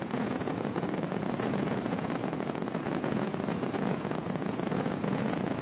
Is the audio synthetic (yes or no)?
yes